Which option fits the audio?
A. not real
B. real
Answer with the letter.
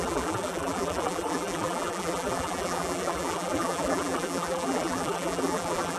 A